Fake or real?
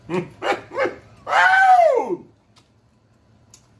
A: real